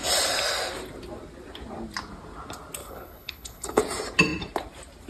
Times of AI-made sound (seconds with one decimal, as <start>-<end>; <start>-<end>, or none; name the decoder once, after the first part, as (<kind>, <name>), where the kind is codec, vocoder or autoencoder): 2.8-3.8 (codec, HILCodec)